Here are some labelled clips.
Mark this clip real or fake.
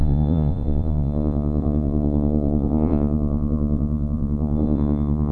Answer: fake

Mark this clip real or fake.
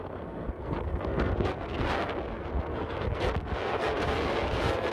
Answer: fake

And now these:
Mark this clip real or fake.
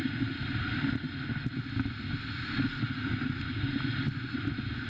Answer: real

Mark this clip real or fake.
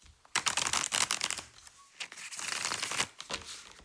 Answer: real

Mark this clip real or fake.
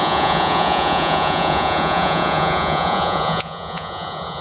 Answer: fake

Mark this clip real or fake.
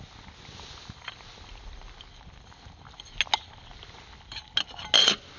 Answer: real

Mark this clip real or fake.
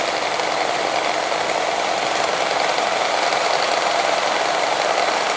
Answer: fake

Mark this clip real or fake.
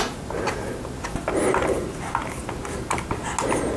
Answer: real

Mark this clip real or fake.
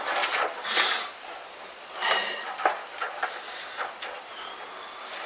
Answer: real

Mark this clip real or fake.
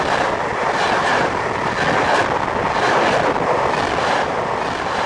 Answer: real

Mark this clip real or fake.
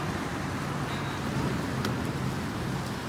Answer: real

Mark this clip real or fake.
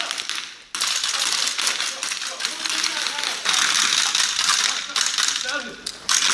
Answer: real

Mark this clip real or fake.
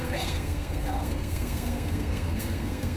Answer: fake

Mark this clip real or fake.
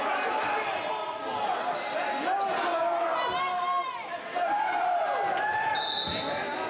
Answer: real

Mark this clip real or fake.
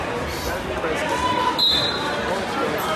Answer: real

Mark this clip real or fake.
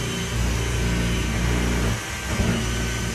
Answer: real